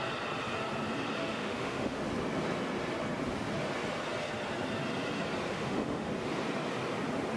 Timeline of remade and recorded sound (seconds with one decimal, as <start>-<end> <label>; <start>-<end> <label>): 0.0-1.2 recorded; 1.2-2.0 remade; 2.0-5.5 recorded; 5.5-6.1 remade; 6.1-7.4 recorded